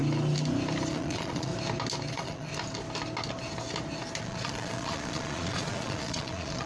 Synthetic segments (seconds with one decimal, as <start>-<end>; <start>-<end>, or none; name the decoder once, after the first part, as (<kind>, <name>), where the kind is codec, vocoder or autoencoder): 0.9-1.5 (vocoder, Vocos); 2.1-2.5; 4.2-6.7